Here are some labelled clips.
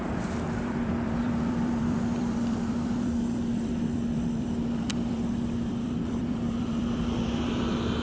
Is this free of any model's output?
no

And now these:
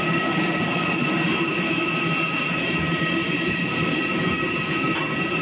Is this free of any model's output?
no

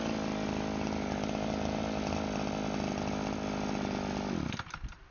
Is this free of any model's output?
yes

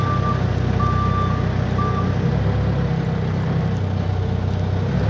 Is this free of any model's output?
yes